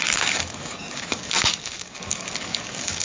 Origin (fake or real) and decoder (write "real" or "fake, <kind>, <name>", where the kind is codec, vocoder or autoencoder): fake, codec, DAC